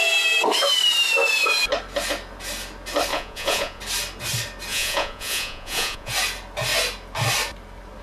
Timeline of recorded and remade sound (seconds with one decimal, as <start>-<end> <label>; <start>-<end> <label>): 0.0-3.1 recorded; 3.1-3.8 remade; 3.8-4.7 recorded; 4.7-6.1 remade; 6.1-8.0 recorded